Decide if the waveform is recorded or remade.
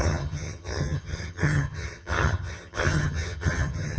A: remade